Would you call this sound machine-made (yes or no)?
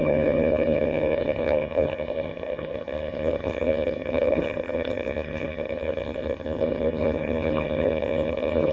yes